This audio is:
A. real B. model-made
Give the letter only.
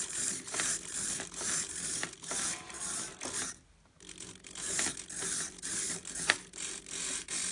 A